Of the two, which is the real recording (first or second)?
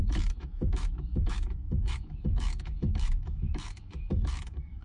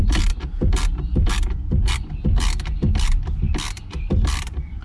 second